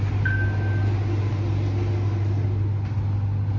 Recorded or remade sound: recorded